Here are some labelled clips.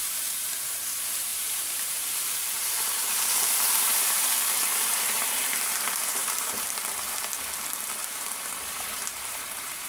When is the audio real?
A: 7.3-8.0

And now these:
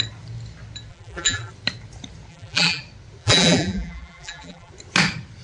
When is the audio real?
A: 0.0-0.9; 1.5-2.3; 2.8-3.2; 4.7-5.4

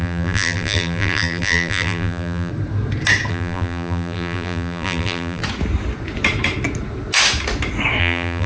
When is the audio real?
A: 2.5-3.3; 5.4-8.0

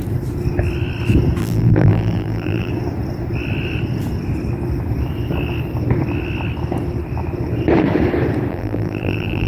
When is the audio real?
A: 0.0-1.4; 2.7-8.5

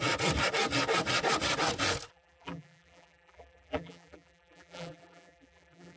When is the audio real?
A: 0.0-2.1